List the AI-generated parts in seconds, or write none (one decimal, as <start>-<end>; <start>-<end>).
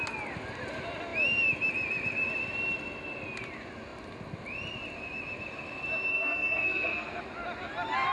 6.1-7.2